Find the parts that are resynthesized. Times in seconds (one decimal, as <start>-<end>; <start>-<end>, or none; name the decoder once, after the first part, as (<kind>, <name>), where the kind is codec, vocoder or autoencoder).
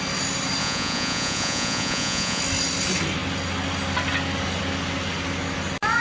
0.6-2.4 (vocoder, Vocos)